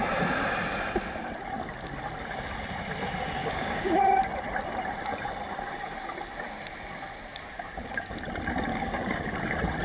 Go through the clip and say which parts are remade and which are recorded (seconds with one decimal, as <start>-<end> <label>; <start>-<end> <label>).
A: 0.0-3.4 recorded; 3.4-4.0 remade; 4.0-7.3 recorded; 7.3-8.1 remade; 8.1-8.7 recorded; 8.7-9.4 remade; 9.4-9.8 recorded